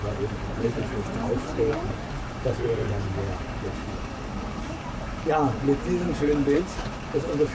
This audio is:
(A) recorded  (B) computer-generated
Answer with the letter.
B